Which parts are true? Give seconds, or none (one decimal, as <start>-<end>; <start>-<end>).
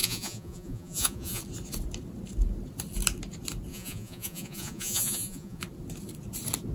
1.4-3.7; 5.6-6.7